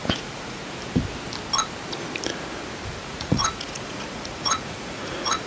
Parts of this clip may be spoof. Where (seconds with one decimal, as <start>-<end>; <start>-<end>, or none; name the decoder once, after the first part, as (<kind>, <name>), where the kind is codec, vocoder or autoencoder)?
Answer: 0.0-0.6 (vocoder, Vocos); 3.0-5.5